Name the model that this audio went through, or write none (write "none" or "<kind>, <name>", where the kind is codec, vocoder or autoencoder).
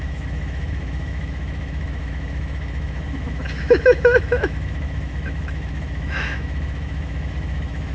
autoencoder, DAC-VAE